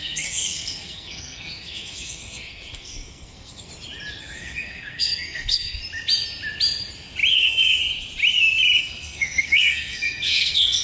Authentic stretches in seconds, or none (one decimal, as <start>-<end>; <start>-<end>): 3.7-4.2; 5.8-7.3; 7.8-8.8